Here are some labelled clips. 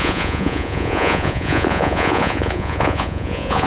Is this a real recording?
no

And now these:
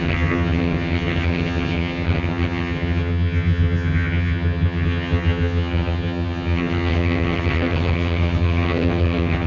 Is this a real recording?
no